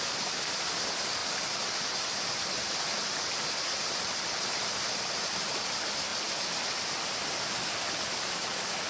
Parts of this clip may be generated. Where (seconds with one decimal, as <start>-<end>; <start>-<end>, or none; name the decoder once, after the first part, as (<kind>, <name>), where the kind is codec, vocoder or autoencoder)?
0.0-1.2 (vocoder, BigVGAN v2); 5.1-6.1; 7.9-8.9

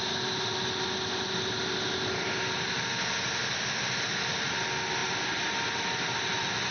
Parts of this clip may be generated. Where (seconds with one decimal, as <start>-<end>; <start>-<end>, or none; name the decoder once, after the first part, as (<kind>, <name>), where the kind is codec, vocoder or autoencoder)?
5.0-6.7 (vocoder, BigVGAN v2)

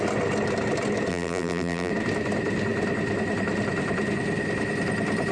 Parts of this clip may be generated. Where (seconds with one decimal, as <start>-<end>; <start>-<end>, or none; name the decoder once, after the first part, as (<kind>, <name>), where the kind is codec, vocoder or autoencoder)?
1.1-1.9 (vocoder, BigVGAN v2)